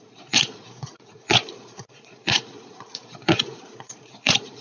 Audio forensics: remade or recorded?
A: remade